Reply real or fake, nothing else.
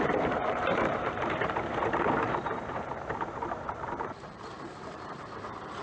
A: fake